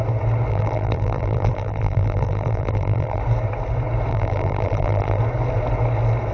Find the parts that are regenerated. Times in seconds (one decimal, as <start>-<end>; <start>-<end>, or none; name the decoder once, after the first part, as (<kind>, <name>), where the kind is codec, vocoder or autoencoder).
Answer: 0.5-3.2 (vocoder, BigVGAN v2); 4.1-5.2